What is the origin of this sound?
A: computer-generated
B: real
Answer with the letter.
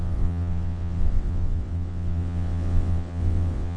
A